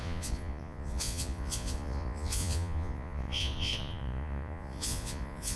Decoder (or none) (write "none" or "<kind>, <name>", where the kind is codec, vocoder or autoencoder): vocoder, Vocos